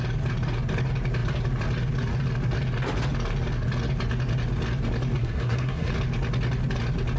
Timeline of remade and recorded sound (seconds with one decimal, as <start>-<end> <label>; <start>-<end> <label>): 0.0-5.2 recorded; 5.2-5.9 remade; 5.9-7.2 recorded